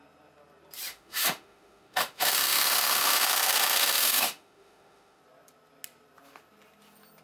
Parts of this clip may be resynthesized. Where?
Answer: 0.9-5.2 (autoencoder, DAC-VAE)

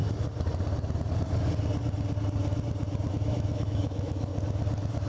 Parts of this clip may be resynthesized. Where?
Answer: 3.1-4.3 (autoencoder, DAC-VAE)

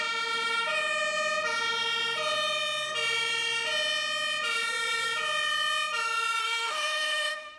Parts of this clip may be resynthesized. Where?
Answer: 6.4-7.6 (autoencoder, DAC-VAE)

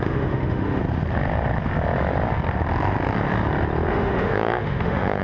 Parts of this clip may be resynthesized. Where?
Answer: 0.0-0.8 (autoencoder, DAC-VAE); 3.9-5.2

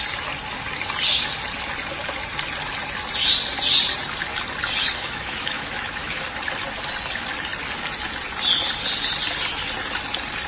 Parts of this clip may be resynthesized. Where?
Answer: 4.8-6.2 (autoencoder, DAC-VAE)

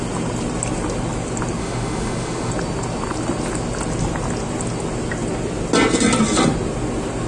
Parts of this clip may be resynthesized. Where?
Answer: 1.6-2.5 (autoencoder, DAC-VAE)